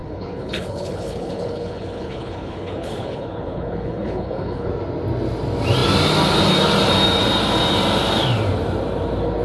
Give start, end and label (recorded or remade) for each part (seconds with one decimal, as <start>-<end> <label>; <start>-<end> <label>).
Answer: 0.0-4.7 remade; 4.7-9.4 recorded

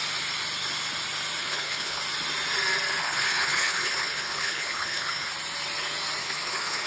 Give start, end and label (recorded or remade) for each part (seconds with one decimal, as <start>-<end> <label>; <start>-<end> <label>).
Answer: 0.0-1.4 recorded; 1.4-2.0 remade; 2.0-3.0 recorded; 3.0-5.3 remade; 5.3-6.2 recorded; 6.2-6.9 remade

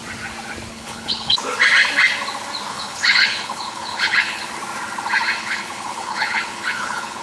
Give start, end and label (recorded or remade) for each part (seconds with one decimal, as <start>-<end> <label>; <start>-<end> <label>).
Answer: 0.0-0.7 recorded; 0.7-1.4 remade; 1.4-2.7 recorded; 2.7-4.4 remade; 4.4-5.4 recorded; 5.4-7.2 remade

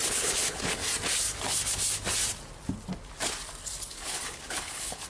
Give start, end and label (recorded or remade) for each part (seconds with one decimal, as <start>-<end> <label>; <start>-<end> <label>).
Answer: 0.0-0.8 remade; 0.8-3.9 recorded; 3.9-5.1 remade

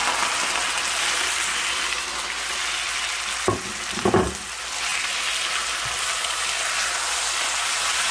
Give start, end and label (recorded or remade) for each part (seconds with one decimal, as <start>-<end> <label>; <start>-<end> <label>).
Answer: 0.0-8.1 recorded

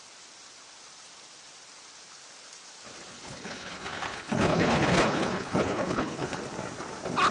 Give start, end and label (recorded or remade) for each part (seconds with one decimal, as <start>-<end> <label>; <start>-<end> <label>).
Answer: 0.0-3.1 recorded; 3.1-6.4 remade; 6.4-7.3 recorded

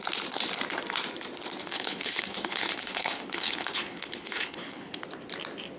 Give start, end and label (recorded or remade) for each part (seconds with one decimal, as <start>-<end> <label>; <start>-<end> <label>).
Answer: 0.0-1.6 recorded; 1.6-5.0 remade; 5.0-5.8 recorded

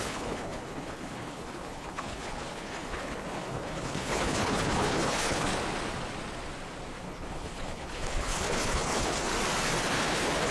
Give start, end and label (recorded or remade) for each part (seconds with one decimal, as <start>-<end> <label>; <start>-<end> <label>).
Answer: 0.0-5.5 remade; 5.5-7.0 recorded; 7.0-9.3 remade; 9.3-9.9 recorded; 9.9-10.5 remade